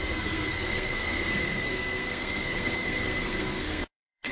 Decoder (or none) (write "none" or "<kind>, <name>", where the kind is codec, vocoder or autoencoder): codec, SNAC